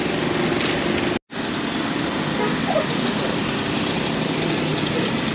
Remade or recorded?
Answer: recorded